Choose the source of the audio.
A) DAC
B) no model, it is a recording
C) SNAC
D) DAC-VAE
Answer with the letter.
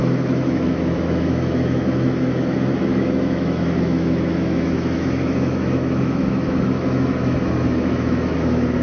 D